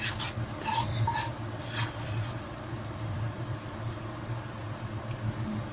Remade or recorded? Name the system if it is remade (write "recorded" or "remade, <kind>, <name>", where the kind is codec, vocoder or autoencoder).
recorded